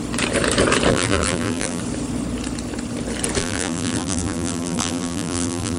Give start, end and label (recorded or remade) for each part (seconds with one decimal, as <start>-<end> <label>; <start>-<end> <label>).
0.0-0.9 recorded; 0.9-1.8 remade; 1.8-3.4 recorded; 3.4-5.8 remade